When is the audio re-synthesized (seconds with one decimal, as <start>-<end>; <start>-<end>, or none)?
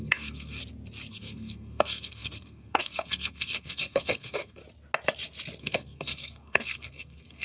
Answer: 0.0-0.6; 1.1-4.6; 5.6-7.4